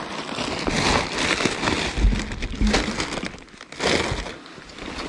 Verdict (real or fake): real